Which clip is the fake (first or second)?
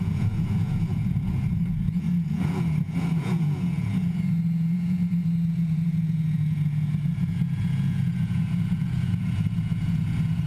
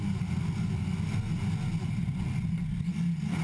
first